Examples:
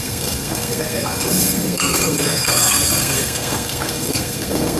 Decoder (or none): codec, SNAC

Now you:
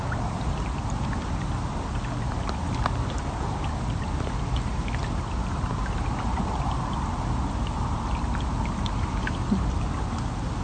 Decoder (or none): none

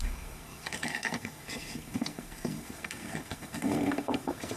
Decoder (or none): codec, SNAC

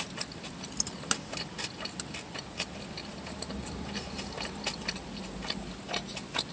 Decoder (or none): none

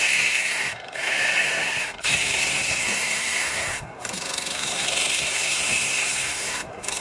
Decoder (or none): codec, SNAC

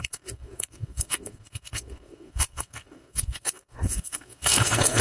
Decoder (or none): codec, SNAC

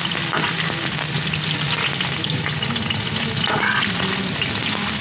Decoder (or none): none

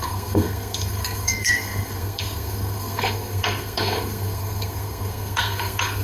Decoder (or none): codec, SNAC